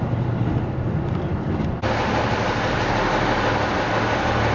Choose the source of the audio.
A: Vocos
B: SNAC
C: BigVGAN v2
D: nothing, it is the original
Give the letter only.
D